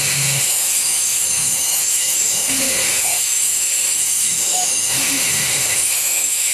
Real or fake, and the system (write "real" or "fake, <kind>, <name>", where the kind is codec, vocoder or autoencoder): fake, autoencoder, DAC-VAE